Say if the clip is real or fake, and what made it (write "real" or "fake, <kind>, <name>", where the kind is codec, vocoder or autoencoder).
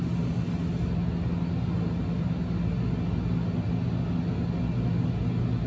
real